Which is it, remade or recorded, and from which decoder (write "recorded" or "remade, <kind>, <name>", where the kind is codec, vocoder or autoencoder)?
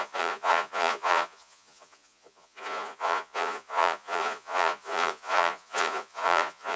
remade, vocoder, Vocos